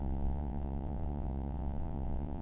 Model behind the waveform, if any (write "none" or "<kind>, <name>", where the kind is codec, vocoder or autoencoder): vocoder, WaveNeXt